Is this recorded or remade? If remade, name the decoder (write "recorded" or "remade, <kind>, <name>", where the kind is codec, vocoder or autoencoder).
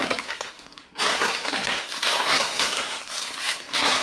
remade, codec, SNAC